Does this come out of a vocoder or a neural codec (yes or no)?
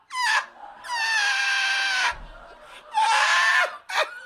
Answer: no